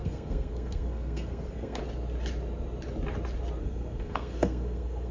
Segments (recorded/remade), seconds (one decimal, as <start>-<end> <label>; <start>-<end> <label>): 0.0-1.8 remade; 1.8-3.6 recorded; 3.6-5.1 remade